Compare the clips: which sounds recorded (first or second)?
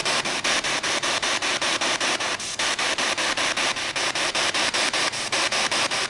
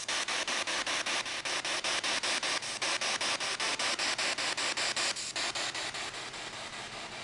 second